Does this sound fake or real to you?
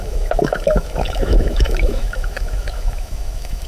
fake